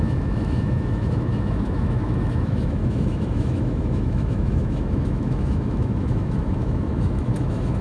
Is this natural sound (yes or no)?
no